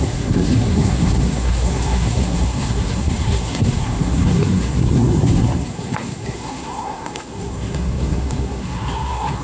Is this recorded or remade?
remade